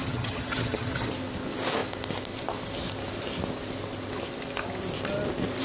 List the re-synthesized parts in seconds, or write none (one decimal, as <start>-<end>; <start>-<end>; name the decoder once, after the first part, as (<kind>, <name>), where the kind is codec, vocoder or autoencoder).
0.0-1.1 (vocoder, HiFi-GAN)